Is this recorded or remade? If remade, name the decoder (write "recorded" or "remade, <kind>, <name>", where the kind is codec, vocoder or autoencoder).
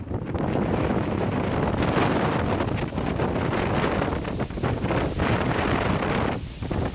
recorded